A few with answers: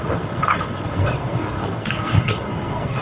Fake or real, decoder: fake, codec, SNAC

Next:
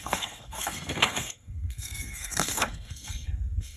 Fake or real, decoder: fake, codec, SNAC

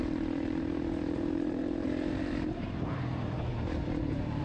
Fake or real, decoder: fake, vocoder, BigVGAN v2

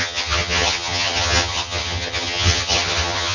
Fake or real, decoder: fake, vocoder, HiFi-GAN